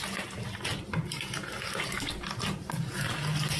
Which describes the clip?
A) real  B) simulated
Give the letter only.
A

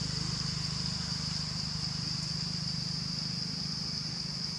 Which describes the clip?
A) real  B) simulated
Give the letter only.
A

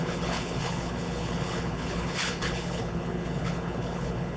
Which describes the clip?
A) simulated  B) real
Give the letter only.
A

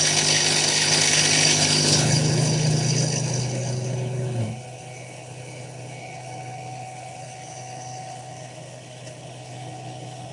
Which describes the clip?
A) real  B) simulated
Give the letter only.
B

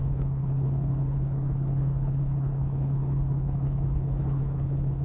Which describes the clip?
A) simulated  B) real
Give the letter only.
A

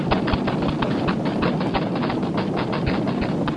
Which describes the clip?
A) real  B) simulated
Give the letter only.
A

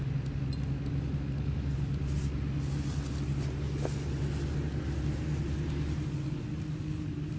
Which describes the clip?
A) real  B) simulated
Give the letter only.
A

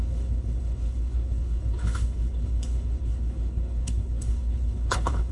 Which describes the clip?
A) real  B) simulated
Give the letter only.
B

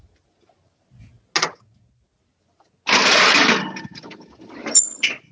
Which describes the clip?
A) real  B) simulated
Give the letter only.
A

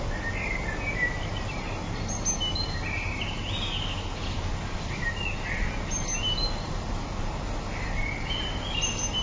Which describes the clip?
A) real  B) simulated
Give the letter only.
A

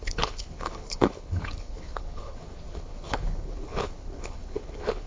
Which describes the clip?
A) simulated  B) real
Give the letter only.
A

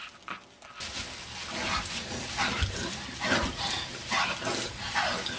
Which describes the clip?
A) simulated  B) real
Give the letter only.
B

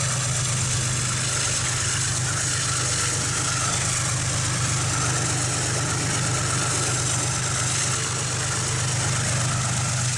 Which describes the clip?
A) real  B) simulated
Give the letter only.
A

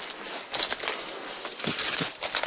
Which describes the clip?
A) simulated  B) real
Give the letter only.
B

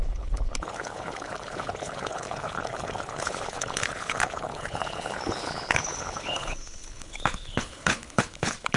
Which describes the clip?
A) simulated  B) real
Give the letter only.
A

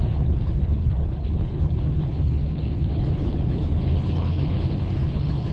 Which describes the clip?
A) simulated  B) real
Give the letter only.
A